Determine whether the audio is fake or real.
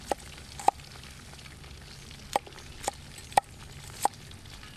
real